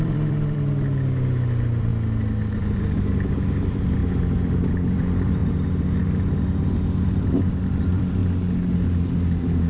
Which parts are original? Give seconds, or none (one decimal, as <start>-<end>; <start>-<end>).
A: 1.9-2.6; 4.0-4.7; 5.4-7.0; 8.2-9.7